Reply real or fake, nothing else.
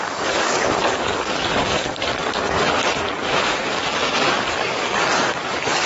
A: fake